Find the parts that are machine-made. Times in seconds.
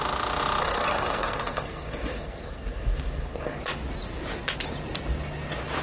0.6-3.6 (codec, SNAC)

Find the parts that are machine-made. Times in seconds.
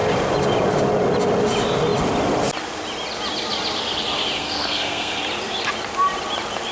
4.4-5.2 (codec, SNAC)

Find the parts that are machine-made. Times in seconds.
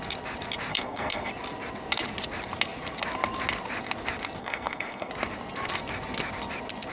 0.7-1.3 (codec, SNAC); 4.4-5.1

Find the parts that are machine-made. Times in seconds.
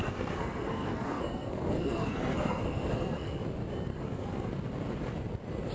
0.0-3.4 (codec, SNAC); 3.9-4.5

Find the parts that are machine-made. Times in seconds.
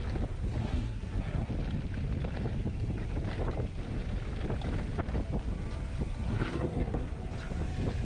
0.6-1.5 (codec, SNAC); 6.3-7.1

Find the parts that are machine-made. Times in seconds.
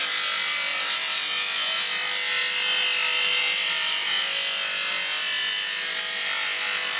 none